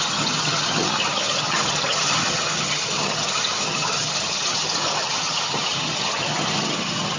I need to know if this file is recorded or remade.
remade